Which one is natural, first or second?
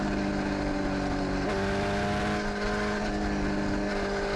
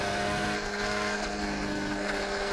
first